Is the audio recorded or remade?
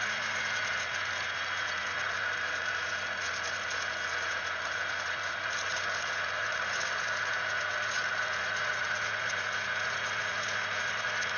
remade